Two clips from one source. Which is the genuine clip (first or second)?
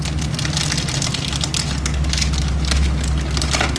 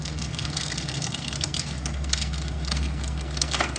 first